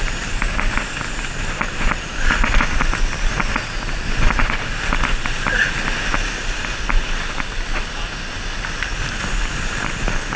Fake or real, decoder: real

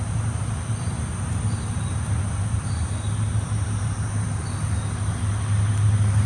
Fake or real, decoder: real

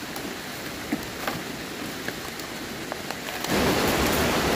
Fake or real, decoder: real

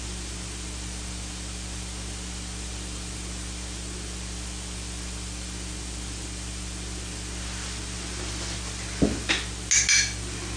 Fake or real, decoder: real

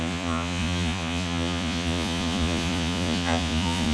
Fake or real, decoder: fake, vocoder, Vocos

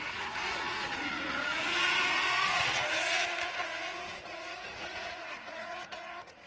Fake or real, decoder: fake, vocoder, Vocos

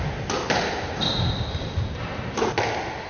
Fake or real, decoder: real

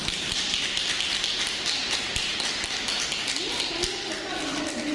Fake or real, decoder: real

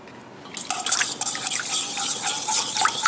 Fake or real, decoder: real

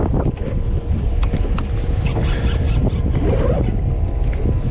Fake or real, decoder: real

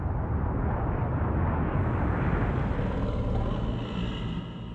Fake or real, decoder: real